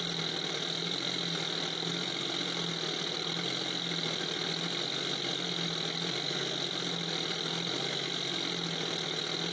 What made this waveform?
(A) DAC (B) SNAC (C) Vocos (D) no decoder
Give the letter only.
D